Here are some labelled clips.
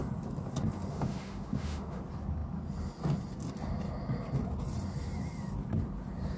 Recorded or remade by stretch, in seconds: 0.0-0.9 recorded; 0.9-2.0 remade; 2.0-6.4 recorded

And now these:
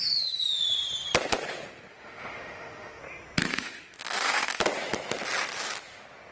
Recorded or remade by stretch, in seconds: 0.0-1.9 recorded; 1.9-3.0 remade; 3.0-3.5 recorded; 3.5-4.6 remade; 4.6-6.3 recorded